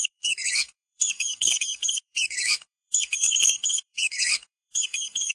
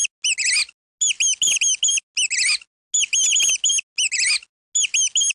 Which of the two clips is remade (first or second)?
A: first